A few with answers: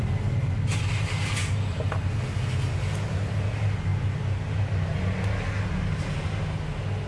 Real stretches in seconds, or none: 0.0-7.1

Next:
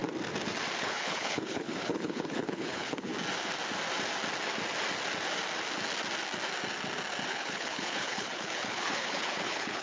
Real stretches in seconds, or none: 0.0-0.8; 3.1-7.3

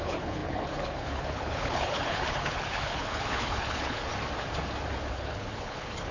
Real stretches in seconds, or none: 4.1-5.1

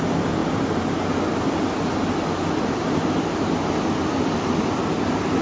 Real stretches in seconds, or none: 0.0-5.4

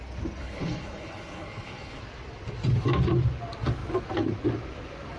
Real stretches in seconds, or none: 0.0-0.4; 2.0-5.2